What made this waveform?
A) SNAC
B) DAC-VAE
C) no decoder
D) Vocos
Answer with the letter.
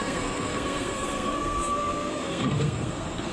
A